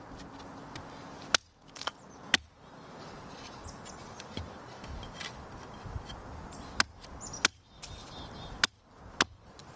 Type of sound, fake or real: real